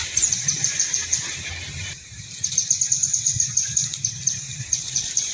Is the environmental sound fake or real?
fake